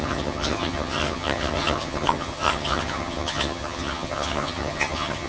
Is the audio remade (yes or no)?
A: yes